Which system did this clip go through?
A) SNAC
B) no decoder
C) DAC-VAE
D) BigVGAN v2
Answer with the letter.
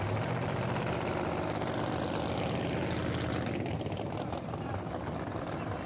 D